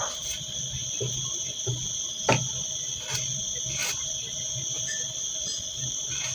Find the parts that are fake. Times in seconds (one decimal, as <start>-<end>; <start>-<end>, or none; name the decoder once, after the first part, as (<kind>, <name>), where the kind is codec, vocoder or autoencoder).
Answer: none